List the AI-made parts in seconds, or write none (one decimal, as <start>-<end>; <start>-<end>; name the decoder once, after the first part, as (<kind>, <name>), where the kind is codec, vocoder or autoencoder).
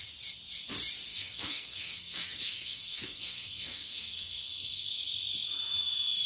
1.1-4.9 (codec, SNAC)